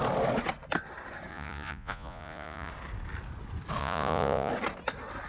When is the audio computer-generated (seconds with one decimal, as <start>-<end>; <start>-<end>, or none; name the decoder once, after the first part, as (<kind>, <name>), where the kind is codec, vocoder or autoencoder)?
1.3-2.7 (vocoder, Vocos); 3.8-4.5